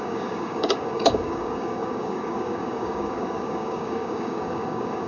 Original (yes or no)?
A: no